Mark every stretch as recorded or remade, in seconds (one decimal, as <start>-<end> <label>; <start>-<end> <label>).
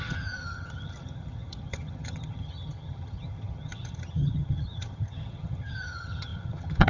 0.0-6.9 remade